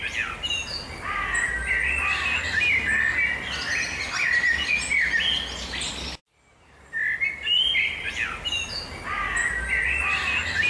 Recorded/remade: recorded